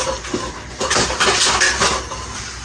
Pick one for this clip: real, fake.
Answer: real